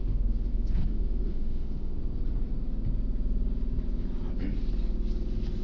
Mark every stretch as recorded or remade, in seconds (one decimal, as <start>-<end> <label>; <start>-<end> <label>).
0.0-2.0 remade; 2.0-5.6 recorded

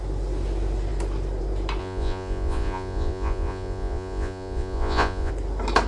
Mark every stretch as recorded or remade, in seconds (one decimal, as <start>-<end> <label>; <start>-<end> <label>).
0.0-1.8 recorded; 1.8-5.3 remade; 5.3-5.9 recorded

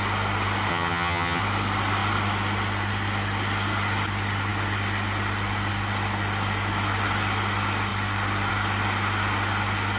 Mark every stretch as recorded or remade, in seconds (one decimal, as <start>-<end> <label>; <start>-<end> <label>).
0.0-0.7 recorded; 0.7-1.4 remade; 1.4-10.0 recorded

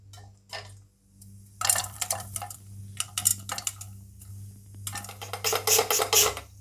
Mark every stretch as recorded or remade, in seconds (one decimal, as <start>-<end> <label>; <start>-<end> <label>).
0.0-1.8 recorded; 1.8-2.8 remade; 2.8-6.6 recorded

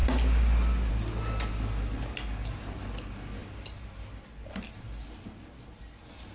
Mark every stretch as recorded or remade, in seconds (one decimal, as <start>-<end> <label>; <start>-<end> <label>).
0.0-6.3 recorded

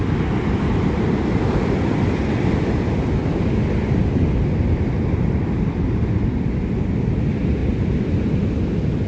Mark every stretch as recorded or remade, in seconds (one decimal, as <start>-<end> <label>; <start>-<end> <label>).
0.0-9.1 recorded

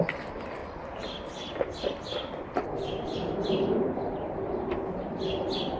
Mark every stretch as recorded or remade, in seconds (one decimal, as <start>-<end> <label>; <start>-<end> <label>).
0.0-5.8 recorded